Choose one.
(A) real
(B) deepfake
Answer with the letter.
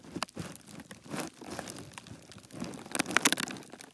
A